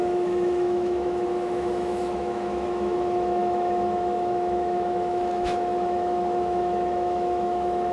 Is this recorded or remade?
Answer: remade